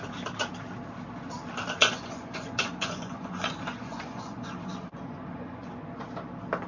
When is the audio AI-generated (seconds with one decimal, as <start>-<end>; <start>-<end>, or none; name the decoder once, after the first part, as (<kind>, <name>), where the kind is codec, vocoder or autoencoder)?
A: 1.8-5.8 (vocoder, Vocos)

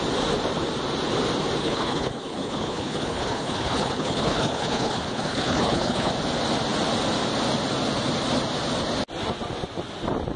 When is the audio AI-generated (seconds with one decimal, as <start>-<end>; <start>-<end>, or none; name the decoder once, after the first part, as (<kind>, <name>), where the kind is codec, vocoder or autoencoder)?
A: 1.6-6.1 (codec, HILCodec)

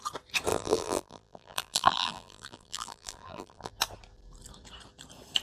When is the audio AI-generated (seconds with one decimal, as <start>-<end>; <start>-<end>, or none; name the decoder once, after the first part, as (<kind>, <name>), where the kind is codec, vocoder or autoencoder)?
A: 0.5-3.7 (vocoder, BigVGAN v2)

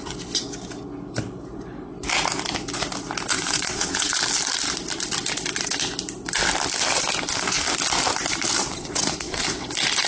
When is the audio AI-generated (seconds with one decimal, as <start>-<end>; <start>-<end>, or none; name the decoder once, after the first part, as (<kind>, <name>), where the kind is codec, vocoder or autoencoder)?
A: 3.3-4.1 (vocoder, WaveNeXt); 8.7-9.7